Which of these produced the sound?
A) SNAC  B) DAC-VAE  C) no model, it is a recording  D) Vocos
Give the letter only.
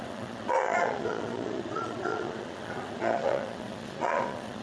D